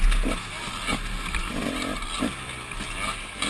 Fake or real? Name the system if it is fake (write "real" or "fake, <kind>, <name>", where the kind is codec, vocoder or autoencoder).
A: real